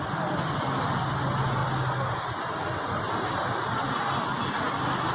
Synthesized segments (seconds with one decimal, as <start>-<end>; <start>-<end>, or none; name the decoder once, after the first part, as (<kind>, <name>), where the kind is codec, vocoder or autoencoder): none

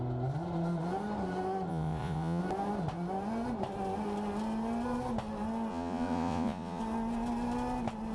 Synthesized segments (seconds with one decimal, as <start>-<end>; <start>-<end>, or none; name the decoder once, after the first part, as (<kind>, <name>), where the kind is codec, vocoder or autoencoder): 1.7-2.4 (vocoder, Vocos); 5.7-6.8